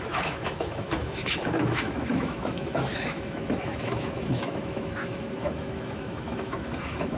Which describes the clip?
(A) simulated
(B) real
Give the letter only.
A